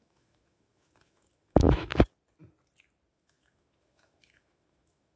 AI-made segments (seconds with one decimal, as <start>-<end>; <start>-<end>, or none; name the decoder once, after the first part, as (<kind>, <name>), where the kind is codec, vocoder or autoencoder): 0.0-1.9 (autoencoder, DAC-VAE); 3.1-5.2